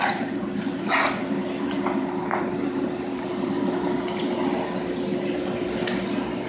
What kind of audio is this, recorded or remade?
recorded